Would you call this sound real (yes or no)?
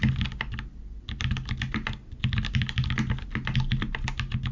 yes